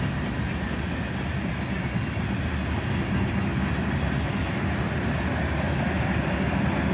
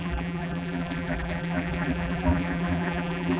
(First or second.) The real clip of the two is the first